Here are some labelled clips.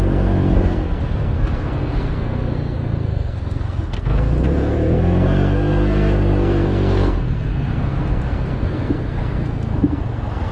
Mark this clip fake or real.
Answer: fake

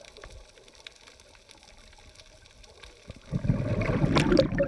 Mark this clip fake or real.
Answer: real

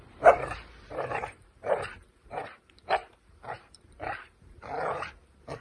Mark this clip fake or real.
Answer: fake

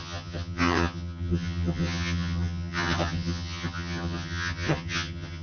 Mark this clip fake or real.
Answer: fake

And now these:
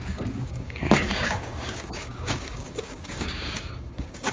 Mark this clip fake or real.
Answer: fake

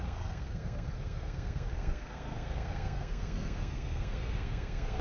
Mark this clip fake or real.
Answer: fake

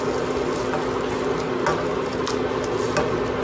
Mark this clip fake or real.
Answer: real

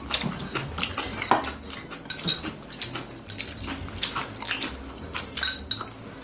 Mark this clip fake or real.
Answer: real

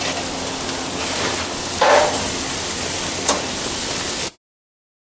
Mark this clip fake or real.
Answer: real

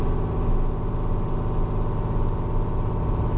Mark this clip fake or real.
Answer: real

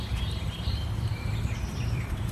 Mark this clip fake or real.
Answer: fake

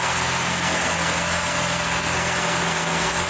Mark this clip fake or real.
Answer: fake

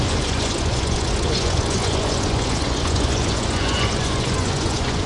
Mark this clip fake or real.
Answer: fake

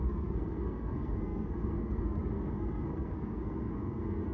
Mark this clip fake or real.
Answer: fake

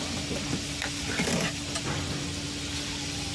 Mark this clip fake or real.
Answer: real